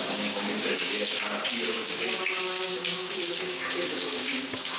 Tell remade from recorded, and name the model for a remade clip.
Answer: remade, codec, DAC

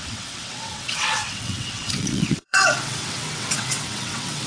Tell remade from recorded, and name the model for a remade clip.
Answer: remade, vocoder, WaveNeXt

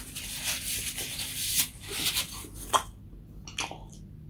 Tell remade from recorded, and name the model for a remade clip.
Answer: recorded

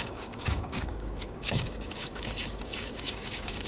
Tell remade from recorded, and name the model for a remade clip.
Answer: remade, codec, DAC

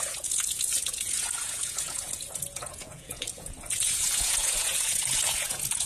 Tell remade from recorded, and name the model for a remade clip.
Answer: remade, vocoder, Vocos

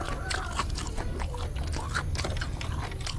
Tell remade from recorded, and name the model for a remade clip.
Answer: recorded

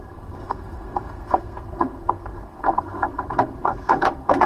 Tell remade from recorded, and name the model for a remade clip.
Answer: remade, codec, SNAC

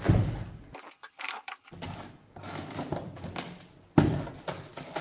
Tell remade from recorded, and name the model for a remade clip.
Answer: remade, vocoder, BigVGAN v2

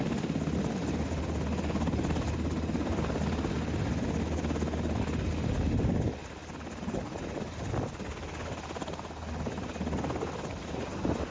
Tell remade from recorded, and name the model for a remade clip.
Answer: recorded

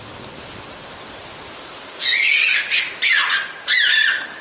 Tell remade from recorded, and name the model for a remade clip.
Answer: recorded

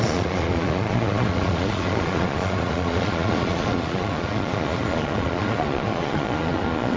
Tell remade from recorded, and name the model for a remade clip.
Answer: remade, vocoder, Vocos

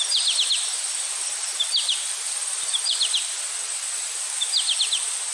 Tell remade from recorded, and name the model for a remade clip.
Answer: recorded